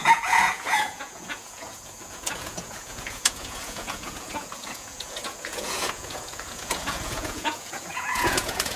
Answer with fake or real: fake